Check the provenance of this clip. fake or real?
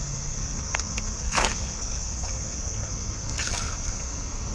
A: fake